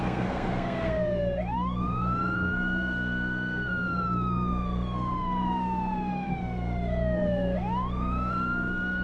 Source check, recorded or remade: remade